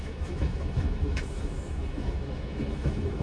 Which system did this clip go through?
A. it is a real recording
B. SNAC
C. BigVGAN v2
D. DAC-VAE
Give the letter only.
D